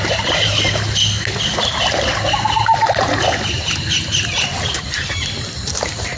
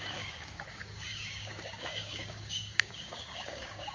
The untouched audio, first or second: first